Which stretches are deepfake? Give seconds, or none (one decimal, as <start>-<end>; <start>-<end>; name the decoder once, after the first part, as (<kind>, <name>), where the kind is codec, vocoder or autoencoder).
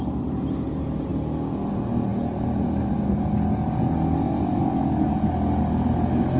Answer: none